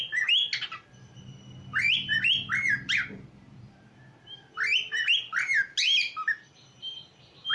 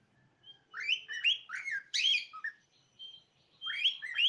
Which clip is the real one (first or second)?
first